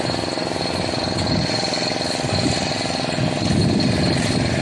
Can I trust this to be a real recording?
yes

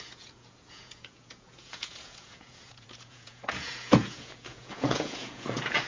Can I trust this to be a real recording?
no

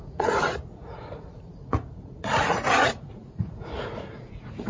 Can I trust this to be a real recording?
no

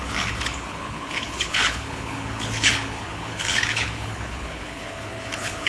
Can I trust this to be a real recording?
no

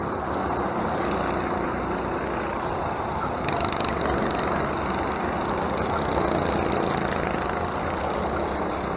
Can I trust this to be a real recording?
yes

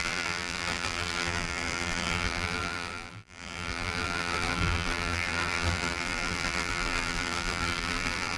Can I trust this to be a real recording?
no